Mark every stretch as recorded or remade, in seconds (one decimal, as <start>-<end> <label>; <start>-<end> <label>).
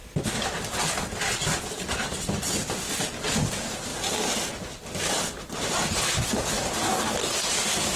0.0-8.0 recorded